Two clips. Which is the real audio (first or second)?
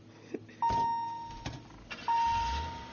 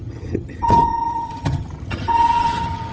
first